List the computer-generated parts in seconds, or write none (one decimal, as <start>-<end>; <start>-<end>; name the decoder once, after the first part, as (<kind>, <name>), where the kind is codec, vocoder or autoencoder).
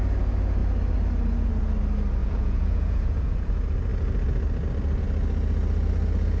2.2-3.5 (vocoder, Vocos)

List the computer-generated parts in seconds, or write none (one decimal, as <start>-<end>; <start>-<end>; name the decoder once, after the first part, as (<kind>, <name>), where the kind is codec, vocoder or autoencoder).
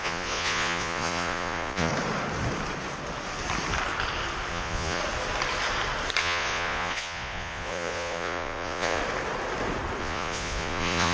0.0-1.9 (vocoder, Vocos); 4.5-5.0; 6.2-9.0; 10.0-11.1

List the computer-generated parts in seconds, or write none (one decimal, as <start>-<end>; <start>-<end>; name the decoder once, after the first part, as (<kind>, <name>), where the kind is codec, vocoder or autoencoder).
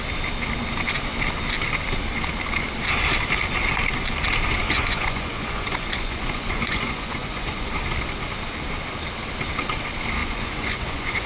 4.6-7.7 (vocoder, Vocos); 10.2-11.3